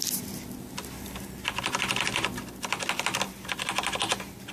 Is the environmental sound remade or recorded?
recorded